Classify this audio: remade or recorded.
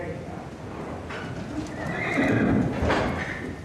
recorded